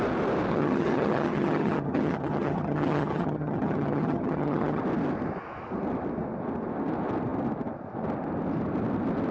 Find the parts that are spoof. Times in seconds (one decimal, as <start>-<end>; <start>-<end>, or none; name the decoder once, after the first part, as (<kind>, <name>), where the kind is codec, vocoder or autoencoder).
0.5-4.8 (vocoder, HiFi-GAN)